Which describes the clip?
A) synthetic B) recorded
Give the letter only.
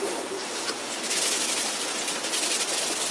B